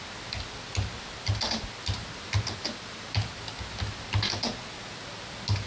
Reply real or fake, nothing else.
real